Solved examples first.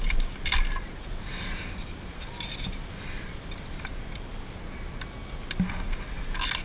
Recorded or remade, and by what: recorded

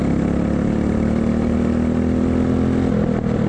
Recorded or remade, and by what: recorded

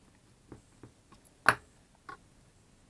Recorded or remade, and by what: recorded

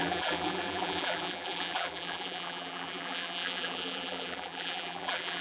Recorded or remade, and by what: remade, vocoder, BigVGAN v2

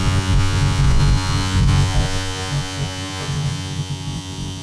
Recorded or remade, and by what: remade, vocoder, Vocos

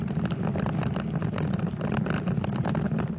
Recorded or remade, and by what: recorded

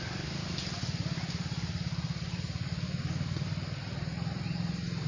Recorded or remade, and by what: recorded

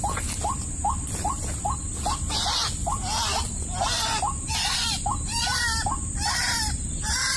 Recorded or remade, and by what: recorded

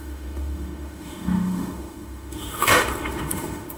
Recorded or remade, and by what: remade, autoencoder, DAC-VAE